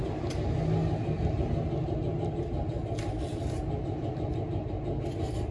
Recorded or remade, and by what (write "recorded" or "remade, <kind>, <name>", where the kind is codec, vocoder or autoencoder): recorded